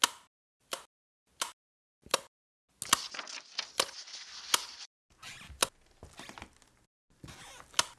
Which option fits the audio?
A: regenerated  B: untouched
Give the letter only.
B